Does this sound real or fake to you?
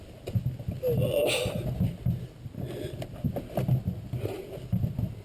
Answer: real